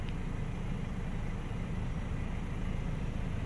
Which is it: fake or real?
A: real